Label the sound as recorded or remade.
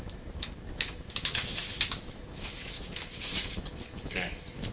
remade